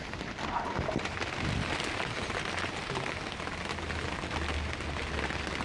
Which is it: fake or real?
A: real